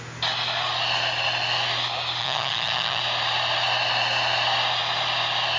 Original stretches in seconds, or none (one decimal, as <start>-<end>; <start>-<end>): 0.0-2.2; 3.0-5.6